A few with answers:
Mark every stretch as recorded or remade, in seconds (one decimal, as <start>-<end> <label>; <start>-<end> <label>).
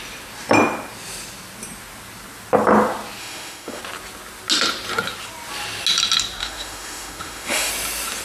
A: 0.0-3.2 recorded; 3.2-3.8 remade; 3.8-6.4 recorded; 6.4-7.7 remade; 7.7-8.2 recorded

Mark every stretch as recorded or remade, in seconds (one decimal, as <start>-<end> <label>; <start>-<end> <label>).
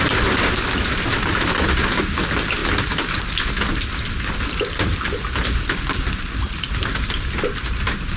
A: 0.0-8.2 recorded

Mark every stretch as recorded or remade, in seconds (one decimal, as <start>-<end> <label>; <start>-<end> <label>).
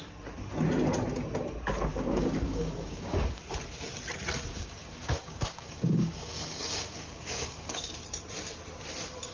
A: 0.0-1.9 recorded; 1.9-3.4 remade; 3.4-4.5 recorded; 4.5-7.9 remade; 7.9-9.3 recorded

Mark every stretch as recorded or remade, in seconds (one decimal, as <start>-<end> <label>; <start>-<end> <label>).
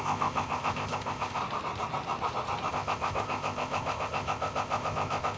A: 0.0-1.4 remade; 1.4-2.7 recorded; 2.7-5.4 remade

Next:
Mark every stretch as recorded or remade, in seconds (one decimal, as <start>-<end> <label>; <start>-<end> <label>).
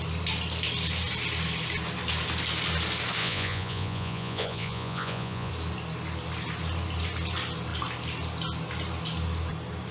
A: 0.0-3.2 recorded; 3.2-5.5 remade; 5.5-9.9 recorded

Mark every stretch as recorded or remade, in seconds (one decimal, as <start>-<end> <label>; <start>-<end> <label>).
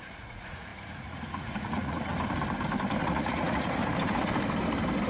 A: 0.0-2.1 remade; 2.1-3.0 recorded; 3.0-3.8 remade; 3.8-5.1 recorded